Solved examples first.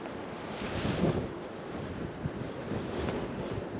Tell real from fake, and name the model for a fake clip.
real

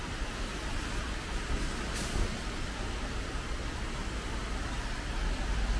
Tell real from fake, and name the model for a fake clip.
real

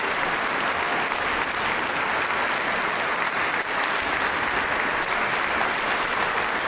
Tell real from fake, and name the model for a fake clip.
real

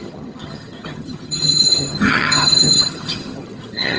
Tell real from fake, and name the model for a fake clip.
fake, vocoder, HiFi-GAN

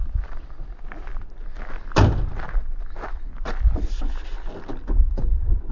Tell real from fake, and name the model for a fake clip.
real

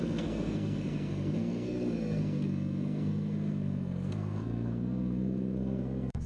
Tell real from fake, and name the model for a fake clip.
fake, codec, SNAC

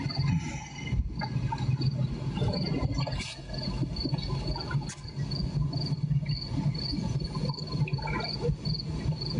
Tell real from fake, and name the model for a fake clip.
real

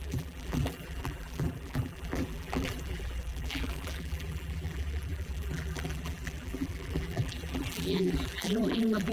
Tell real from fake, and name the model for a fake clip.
fake, vocoder, BigVGAN v2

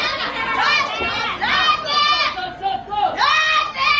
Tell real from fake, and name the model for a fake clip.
real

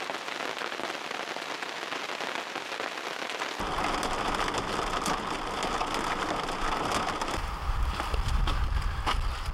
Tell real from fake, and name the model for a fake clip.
real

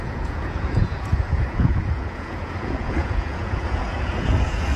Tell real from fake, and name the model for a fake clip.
fake, vocoder, Vocos